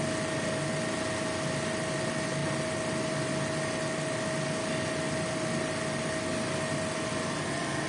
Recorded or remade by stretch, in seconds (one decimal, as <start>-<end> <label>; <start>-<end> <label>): 0.0-7.9 recorded